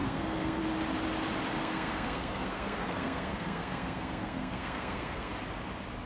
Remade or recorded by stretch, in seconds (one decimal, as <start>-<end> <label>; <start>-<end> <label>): 0.0-0.6 remade; 0.6-1.6 recorded; 1.6-5.3 remade; 5.3-6.1 recorded